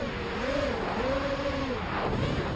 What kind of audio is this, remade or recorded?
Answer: remade